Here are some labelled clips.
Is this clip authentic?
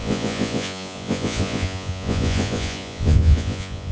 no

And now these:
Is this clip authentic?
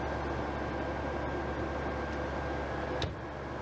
yes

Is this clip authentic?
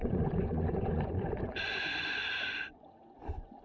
no